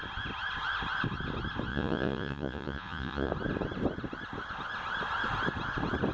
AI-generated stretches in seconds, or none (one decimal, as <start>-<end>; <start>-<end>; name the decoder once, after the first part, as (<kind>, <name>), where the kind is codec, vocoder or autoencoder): 1.7-3.3 (vocoder, Vocos)